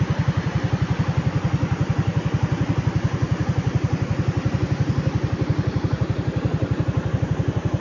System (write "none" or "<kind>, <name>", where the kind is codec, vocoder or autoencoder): none